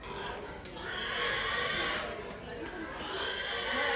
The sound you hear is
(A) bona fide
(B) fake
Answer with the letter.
A